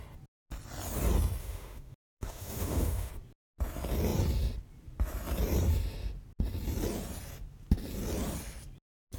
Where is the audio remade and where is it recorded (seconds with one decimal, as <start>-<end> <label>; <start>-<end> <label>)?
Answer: 0.0-1.4 recorded; 1.4-3.1 remade; 3.1-9.2 recorded